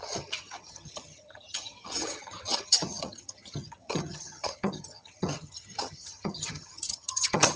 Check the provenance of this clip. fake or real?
fake